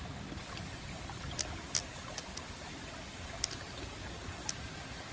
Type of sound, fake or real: real